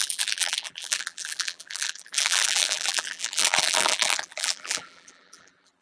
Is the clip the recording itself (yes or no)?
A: no